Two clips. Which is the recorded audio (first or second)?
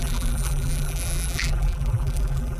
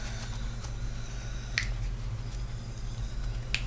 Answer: second